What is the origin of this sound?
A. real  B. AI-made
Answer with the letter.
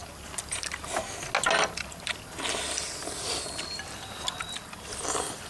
A